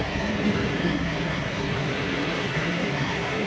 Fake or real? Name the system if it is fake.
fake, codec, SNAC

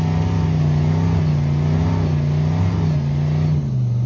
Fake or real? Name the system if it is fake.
real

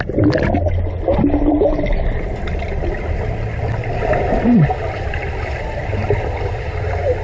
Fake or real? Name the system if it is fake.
real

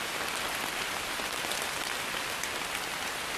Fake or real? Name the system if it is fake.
real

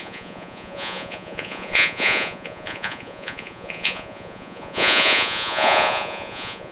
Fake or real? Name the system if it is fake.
fake, vocoder, Vocos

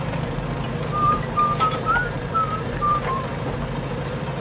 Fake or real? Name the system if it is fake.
fake, vocoder, BigVGAN v2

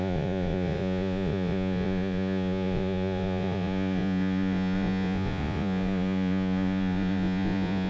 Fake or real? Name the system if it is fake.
fake, vocoder, Vocos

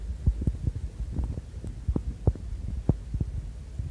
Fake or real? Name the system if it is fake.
real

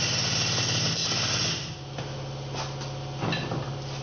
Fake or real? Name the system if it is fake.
real